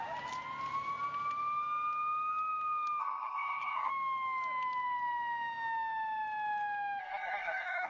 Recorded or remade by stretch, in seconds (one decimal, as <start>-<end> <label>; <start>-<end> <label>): 0.0-3.0 recorded; 3.0-3.9 remade; 3.9-7.0 recorded; 7.0-7.9 remade